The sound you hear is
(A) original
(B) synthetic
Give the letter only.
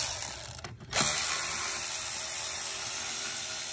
A